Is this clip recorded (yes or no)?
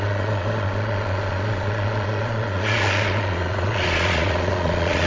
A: no